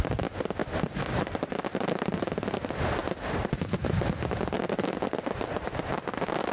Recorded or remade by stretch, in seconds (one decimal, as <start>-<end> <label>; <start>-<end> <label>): 0.0-6.5 recorded